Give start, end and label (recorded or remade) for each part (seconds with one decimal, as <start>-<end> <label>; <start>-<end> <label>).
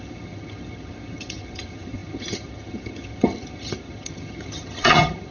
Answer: 0.0-5.3 remade